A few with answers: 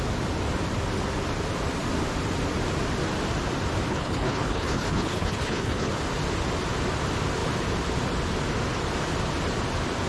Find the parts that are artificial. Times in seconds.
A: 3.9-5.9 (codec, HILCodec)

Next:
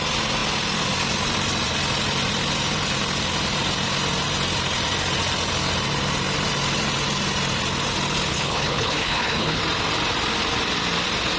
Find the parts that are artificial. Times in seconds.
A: 8.3-9.6 (codec, HILCodec)

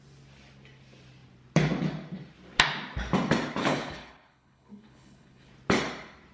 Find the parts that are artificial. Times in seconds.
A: 3.6-5.5 (codec, HILCodec)

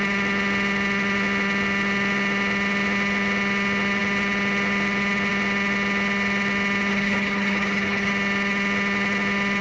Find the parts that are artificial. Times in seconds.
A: 6.9-8.1 (codec, HILCodec)